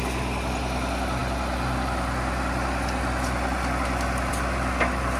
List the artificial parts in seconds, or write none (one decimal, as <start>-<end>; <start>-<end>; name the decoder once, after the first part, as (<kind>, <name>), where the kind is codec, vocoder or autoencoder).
none